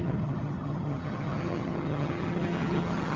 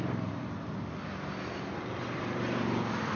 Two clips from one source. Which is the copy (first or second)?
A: first